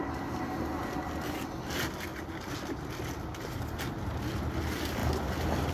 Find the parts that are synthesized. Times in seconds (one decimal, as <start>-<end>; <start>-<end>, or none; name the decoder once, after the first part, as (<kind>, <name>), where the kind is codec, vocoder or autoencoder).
none